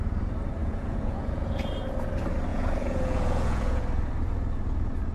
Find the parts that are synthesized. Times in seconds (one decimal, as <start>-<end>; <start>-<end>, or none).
0.6-1.7; 2.5-3.8